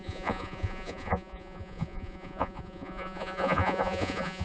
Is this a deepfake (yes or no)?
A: yes